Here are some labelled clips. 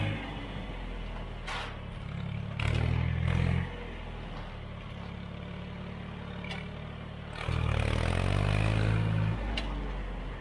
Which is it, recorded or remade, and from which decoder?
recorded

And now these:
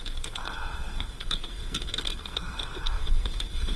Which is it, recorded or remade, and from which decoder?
remade, codec, SNAC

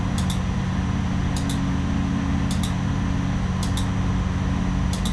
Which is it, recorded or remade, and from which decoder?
recorded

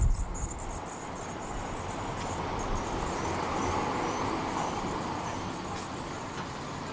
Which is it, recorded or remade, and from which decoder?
recorded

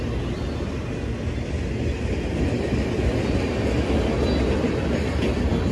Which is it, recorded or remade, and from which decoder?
recorded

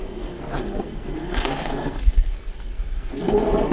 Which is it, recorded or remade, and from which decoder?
remade, codec, SNAC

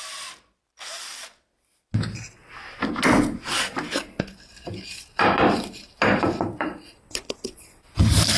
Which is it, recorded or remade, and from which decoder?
recorded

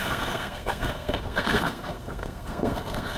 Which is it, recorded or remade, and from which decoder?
remade, codec, SNAC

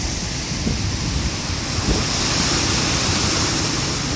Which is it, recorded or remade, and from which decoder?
recorded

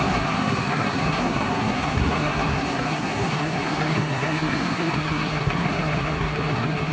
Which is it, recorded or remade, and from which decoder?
remade, codec, SNAC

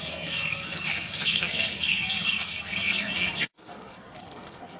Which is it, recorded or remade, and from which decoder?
remade, codec, SNAC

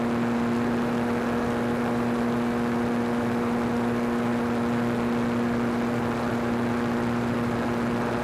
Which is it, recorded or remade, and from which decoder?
recorded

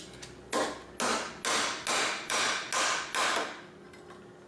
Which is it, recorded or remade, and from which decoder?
recorded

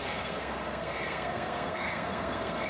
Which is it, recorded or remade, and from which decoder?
remade, codec, SNAC